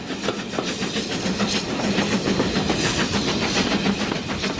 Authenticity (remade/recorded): recorded